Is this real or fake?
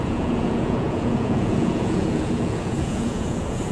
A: fake